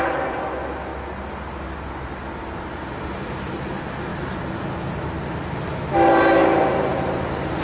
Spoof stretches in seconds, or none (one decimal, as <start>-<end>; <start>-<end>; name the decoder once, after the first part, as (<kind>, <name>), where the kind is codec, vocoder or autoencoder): none